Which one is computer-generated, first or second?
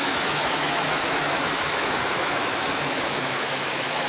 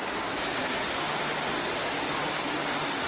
first